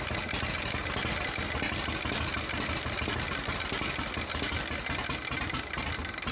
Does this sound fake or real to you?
real